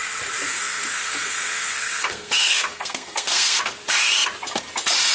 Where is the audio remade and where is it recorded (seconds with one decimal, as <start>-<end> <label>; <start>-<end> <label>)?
0.0-0.5 recorded; 0.5-3.6 remade; 3.6-5.1 recorded